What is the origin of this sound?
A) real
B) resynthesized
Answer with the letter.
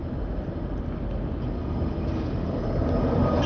A